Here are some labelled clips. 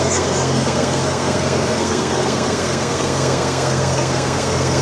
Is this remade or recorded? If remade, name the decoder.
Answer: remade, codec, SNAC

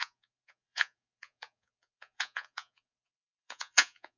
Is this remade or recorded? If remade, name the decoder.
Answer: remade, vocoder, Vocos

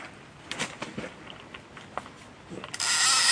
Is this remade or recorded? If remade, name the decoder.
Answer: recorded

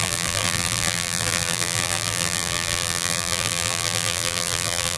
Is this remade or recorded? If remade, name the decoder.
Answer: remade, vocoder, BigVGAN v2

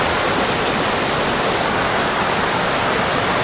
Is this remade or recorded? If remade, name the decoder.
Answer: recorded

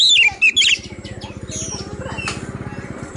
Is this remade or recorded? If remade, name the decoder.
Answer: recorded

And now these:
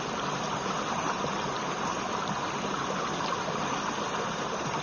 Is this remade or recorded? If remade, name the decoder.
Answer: recorded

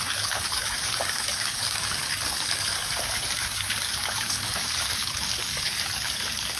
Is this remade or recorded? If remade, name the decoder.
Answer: remade, codec, DAC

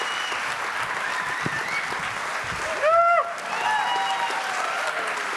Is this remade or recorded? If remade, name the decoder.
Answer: recorded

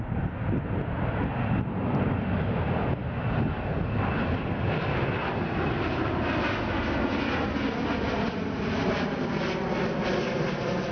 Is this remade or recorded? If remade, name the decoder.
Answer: recorded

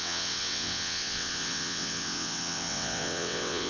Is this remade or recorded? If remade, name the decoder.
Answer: remade, vocoder, WaveNeXt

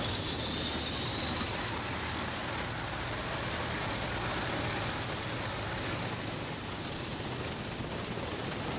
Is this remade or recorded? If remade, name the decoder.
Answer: recorded